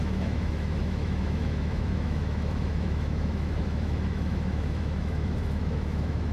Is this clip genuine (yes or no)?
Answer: no